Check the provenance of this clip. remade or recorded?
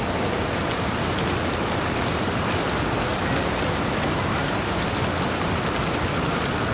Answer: recorded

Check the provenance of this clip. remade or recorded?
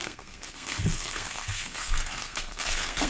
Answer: remade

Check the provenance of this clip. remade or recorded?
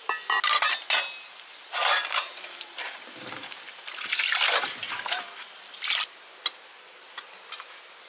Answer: recorded